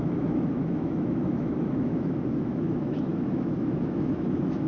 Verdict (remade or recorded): remade